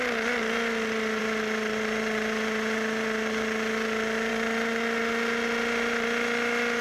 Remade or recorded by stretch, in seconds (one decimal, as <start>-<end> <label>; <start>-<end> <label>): 0.0-6.8 recorded